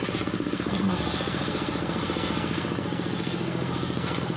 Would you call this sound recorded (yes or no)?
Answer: no